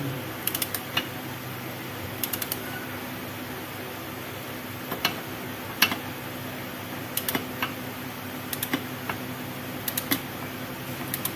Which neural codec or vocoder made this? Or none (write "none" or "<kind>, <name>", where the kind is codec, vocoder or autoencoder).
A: none